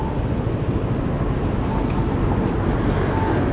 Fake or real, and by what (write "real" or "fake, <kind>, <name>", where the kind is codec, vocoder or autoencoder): real